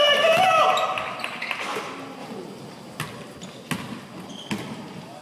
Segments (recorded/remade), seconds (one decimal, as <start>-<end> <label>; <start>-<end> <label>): 0.0-2.2 recorded; 2.2-3.0 remade; 3.0-5.2 recorded